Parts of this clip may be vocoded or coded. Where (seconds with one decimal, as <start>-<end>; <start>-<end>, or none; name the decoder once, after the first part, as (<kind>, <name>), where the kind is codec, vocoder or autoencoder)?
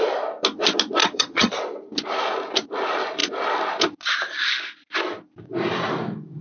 1.0-1.6 (vocoder, HiFi-GAN)